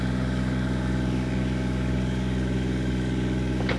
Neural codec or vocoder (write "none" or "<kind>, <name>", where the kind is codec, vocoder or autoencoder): codec, DAC